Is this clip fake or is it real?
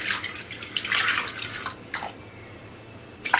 real